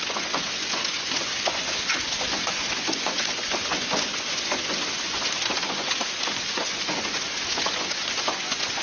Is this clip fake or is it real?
fake